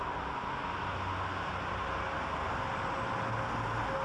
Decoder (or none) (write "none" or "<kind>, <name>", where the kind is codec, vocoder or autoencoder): none